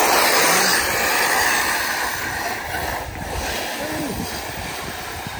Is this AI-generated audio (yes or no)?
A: no